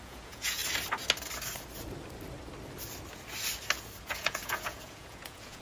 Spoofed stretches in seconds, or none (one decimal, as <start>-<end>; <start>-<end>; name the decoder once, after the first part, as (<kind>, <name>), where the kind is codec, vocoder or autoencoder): 0.0-0.6 (vocoder, Vocos); 4.0-5.6